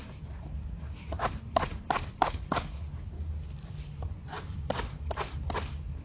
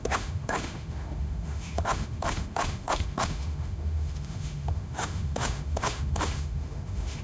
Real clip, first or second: first